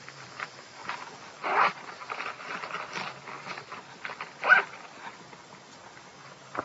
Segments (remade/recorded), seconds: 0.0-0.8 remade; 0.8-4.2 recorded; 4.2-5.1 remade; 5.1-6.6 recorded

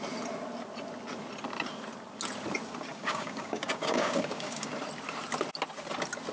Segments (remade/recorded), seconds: 0.0-2.9 recorded; 2.9-4.7 remade; 4.7-6.3 recorded

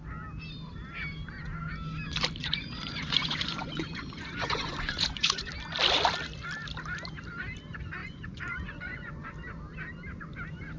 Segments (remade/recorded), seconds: 0.0-2.4 recorded; 2.4-5.5 remade; 5.5-8.0 recorded; 8.0-9.3 remade; 9.3-10.8 recorded

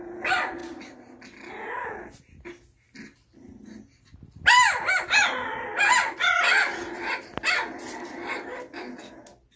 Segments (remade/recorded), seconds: 0.0-9.6 recorded

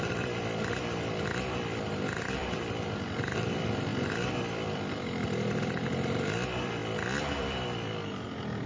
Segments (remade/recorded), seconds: 0.0-3.9 remade; 3.9-4.4 recorded; 4.4-6.8 remade; 6.8-7.4 recorded; 7.4-8.7 remade